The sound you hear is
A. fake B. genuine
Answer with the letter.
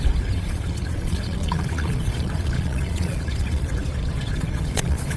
A